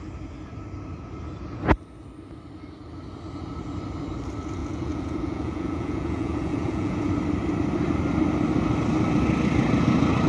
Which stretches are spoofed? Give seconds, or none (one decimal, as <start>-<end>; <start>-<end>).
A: 4.6-7.1